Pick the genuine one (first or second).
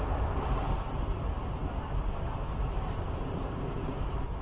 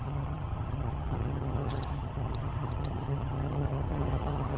first